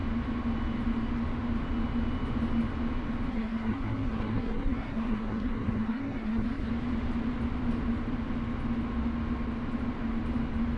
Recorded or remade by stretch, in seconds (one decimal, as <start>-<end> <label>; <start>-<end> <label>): 0.0-3.3 recorded; 3.3-6.7 remade; 6.7-10.8 recorded